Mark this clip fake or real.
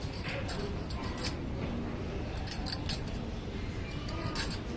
real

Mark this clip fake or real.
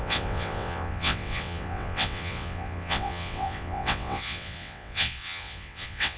fake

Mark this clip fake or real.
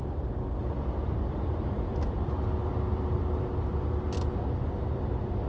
real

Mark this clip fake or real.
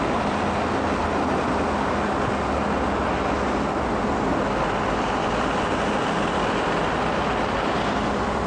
real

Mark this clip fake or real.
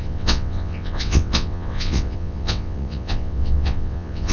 fake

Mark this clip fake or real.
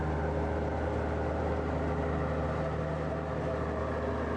real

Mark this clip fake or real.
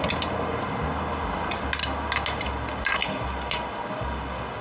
real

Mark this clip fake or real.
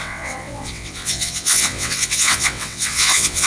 fake